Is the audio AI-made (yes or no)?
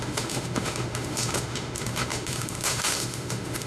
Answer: yes